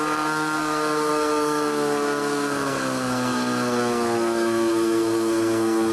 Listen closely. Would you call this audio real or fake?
fake